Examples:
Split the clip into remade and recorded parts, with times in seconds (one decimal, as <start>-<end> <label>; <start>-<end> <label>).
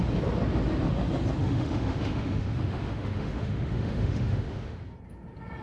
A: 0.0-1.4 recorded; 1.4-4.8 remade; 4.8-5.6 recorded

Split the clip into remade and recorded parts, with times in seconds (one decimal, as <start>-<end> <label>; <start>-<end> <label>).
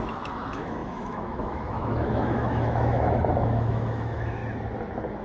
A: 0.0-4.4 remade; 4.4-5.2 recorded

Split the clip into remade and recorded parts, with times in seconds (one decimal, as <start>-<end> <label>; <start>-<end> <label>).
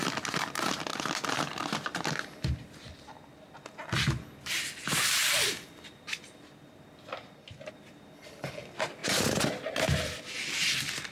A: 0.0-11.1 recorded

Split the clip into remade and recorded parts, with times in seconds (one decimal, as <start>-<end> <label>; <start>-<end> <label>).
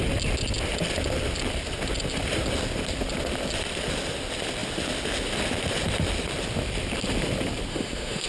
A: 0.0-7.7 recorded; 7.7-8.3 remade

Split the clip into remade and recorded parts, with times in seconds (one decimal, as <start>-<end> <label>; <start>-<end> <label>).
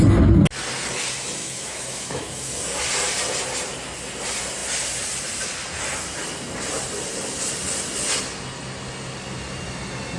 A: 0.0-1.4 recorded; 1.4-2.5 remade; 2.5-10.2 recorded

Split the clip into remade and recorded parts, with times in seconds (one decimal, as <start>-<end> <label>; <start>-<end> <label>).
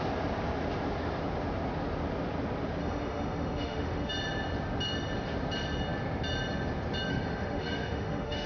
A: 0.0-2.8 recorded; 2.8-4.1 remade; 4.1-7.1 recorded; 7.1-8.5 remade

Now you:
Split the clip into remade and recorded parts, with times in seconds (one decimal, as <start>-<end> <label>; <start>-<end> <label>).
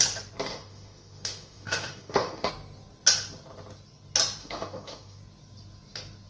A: 0.0-0.5 recorded; 0.5-2.5 remade; 2.5-4.4 recorded; 4.4-5.2 remade; 5.2-6.3 recorded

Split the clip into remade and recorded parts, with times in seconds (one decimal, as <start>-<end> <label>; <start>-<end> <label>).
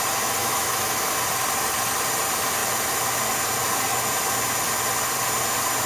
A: 0.0-0.4 recorded; 0.4-1.1 remade; 1.1-5.9 recorded